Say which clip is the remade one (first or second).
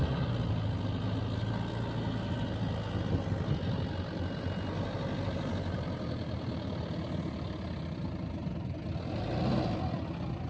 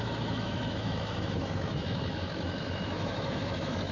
second